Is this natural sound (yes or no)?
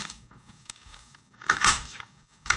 no